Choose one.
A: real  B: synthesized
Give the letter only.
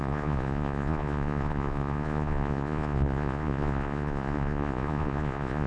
B